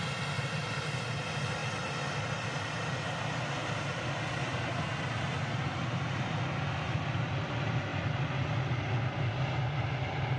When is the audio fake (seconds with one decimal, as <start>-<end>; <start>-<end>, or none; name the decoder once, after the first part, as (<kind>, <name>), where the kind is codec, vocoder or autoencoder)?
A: 3.6-6.5 (vocoder, BigVGAN v2)